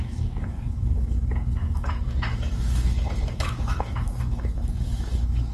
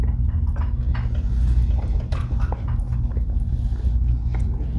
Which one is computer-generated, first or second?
first